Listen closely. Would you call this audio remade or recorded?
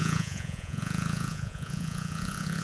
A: remade